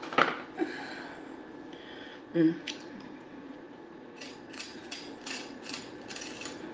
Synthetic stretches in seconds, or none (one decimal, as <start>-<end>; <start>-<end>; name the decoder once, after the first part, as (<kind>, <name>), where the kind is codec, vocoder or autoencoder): 2.1-6.1 (vocoder, Vocos)